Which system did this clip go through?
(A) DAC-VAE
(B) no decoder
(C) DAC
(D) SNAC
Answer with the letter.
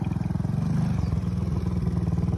B